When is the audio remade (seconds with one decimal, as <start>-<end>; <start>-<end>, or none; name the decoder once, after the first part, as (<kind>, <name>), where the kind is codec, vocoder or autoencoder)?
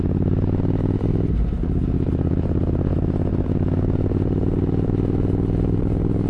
none